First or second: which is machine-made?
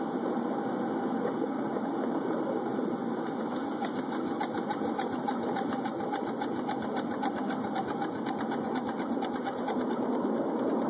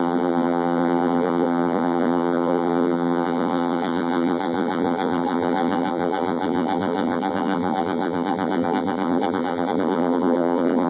second